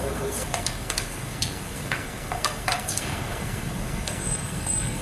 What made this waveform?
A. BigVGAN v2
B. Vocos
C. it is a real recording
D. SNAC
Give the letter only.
D